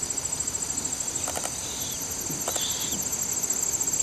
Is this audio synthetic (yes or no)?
no